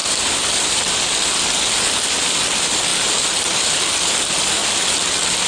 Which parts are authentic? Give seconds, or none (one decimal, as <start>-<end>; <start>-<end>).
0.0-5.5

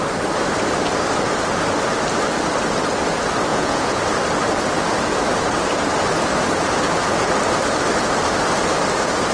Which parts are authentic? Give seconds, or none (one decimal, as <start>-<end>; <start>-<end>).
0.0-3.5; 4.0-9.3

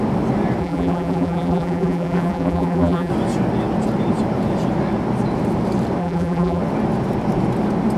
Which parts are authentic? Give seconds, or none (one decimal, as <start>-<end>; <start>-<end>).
0.0-0.6; 3.1-6.0; 6.6-8.0

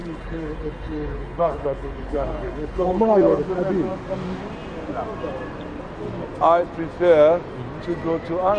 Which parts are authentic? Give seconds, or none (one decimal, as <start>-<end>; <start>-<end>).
3.4-8.6